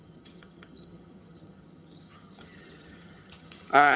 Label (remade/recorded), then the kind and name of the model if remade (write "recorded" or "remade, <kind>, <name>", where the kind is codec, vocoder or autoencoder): remade, vocoder, HiFi-GAN